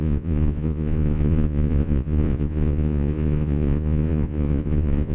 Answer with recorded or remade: remade